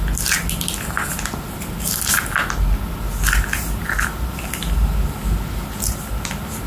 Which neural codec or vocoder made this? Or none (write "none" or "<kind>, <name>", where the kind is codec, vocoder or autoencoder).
none